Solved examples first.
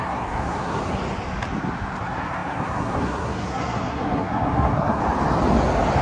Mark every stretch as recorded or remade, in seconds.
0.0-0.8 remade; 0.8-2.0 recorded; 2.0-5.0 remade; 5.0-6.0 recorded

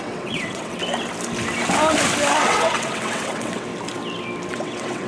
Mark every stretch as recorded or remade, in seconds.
0.0-0.8 remade; 0.8-2.4 recorded; 2.4-3.7 remade; 3.7-4.5 recorded; 4.5-5.1 remade

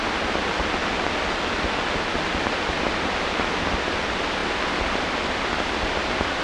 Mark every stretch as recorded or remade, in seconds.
0.0-6.4 recorded

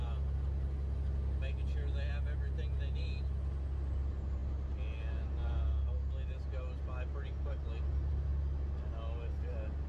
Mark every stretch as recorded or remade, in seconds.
0.0-9.9 recorded

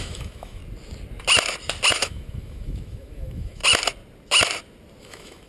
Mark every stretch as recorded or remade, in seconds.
0.0-0.6 remade; 0.6-1.9 recorded; 1.9-3.6 remade; 3.6-5.0 recorded; 5.0-5.5 remade